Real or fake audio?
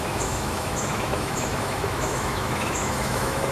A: fake